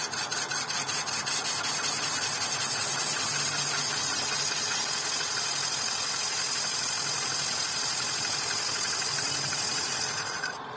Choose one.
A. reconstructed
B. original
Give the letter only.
B